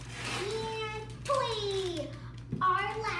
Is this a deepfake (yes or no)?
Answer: no